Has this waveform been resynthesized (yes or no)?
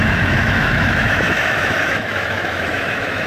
yes